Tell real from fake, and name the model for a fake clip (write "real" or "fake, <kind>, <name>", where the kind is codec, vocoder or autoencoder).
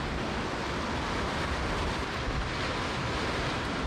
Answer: real